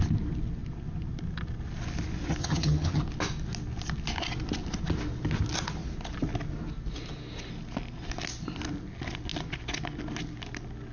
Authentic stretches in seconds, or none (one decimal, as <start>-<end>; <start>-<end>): 0.0-2.4; 3.0-10.9